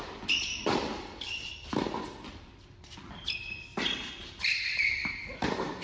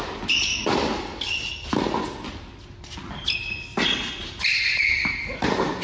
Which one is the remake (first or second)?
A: first